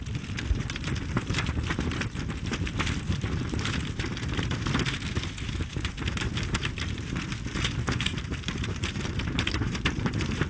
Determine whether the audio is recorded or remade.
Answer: remade